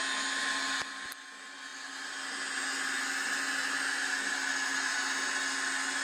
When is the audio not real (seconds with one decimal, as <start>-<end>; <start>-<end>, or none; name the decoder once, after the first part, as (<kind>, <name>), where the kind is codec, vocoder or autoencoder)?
none